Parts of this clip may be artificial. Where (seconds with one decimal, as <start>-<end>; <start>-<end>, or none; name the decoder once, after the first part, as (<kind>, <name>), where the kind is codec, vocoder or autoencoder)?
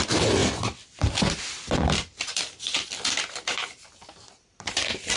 none